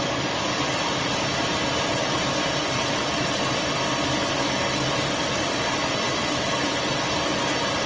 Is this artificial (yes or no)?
no